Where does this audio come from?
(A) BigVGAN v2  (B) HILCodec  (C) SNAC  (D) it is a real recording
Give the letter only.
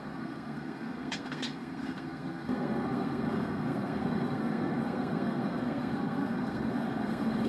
C